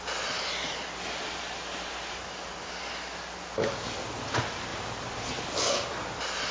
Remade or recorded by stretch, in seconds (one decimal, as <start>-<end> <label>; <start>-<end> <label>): 0.0-6.5 recorded